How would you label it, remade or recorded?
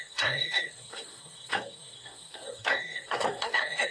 remade